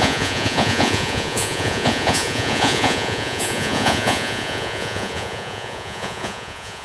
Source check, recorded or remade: remade